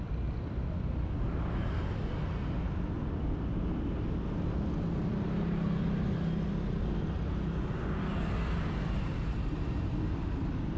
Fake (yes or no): no